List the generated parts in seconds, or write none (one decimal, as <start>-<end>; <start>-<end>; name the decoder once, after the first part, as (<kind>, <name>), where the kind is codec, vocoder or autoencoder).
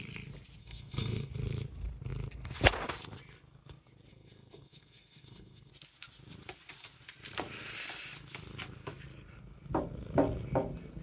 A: 0.6-1.3 (codec, SNAC); 4.1-5.7